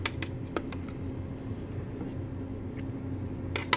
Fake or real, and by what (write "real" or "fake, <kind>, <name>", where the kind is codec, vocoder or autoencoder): real